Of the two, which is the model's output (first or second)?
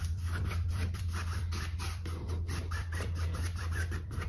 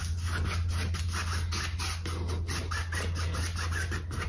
first